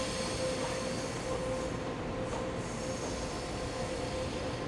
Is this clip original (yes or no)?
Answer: yes